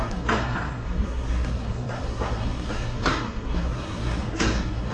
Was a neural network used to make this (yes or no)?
yes